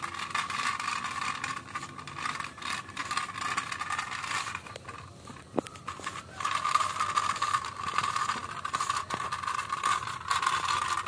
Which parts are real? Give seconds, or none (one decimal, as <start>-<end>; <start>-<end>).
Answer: 3.0-6.2